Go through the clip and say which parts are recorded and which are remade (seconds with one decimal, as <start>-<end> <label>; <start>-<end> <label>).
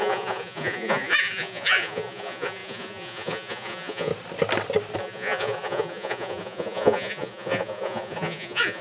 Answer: 0.0-4.1 remade; 4.1-5.0 recorded; 5.0-8.8 remade